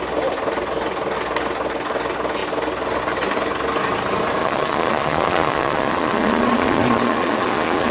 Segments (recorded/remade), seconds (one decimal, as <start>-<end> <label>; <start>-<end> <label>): 0.0-4.4 recorded; 4.4-7.9 remade